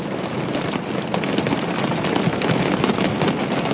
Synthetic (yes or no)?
no